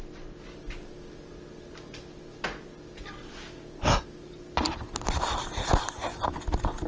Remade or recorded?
recorded